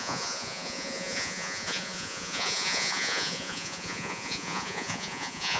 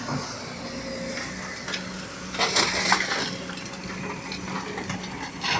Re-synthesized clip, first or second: first